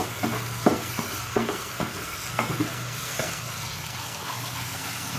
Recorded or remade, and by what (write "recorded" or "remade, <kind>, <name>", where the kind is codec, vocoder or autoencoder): remade, codec, SNAC